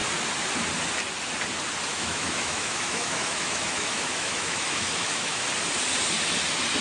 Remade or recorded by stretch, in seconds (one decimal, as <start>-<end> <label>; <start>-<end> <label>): 0.0-1.9 recorded; 1.9-5.4 remade; 5.4-6.8 recorded